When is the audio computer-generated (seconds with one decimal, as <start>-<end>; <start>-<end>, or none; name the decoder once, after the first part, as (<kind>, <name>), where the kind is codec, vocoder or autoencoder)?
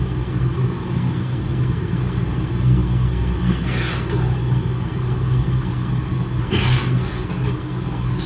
0.0-8.3 (codec, SNAC)